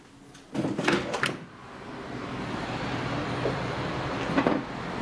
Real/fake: real